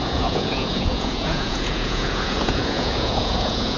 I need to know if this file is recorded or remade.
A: remade